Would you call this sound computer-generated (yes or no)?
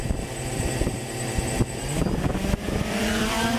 yes